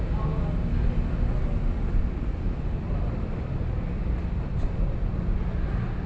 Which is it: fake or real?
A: real